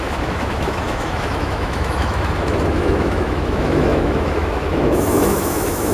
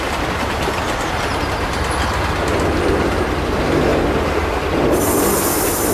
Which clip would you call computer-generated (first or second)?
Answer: first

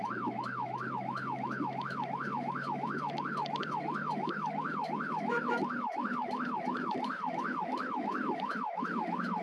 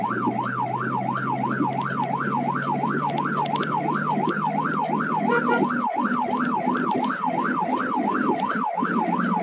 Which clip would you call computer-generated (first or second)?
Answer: first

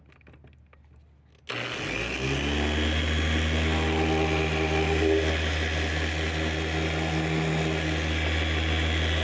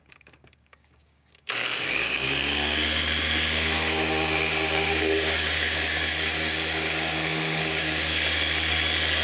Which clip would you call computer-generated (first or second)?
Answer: second